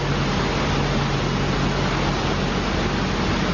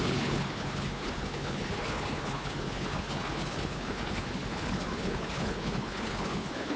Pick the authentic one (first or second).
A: first